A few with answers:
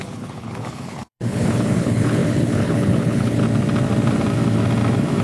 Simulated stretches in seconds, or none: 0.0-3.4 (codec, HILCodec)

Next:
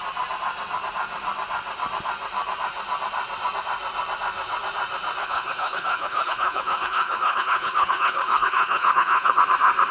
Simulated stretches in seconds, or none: 5.2-9.4 (codec, HILCodec)

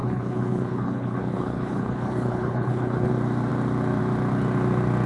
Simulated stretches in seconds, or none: 0.0-3.1 (codec, HILCodec)

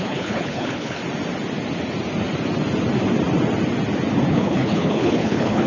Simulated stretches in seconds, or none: 0.0-1.0 (codec, HILCodec); 4.3-5.7

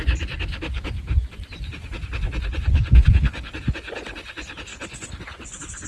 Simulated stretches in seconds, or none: 2.7-3.5 (codec, HILCodec); 4.7-5.2

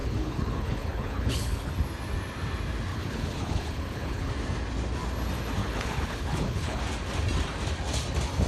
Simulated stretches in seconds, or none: 0.0-1.7 (codec, HILCodec); 2.9-4.3; 5.6-6.8

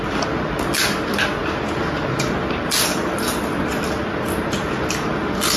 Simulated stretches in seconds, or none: none

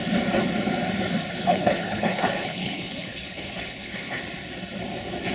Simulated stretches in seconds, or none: 1.3-4.2 (codec, HILCodec)